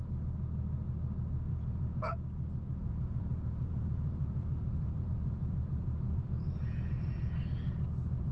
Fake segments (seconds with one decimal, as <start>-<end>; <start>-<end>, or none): 1.5-2.2; 2.8-7.4